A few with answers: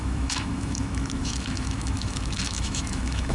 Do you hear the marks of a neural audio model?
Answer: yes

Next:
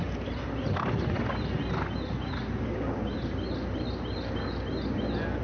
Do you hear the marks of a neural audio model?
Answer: no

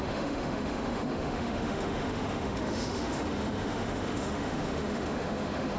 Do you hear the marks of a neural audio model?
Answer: yes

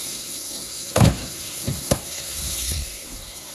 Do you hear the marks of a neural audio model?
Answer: yes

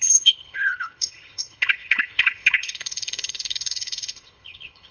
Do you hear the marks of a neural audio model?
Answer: yes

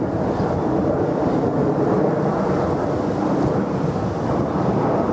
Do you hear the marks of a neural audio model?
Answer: no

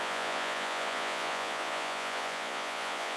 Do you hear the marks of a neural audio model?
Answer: yes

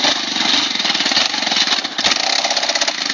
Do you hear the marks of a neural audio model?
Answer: no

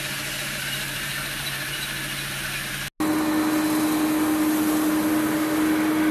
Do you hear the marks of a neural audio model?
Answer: no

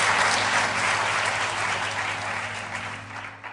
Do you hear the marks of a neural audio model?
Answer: no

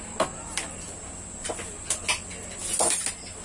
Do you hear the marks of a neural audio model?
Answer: no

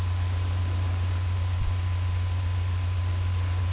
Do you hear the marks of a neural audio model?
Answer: yes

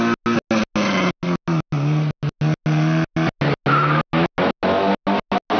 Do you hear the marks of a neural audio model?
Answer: no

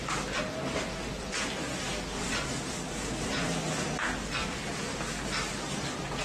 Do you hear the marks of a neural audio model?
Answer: no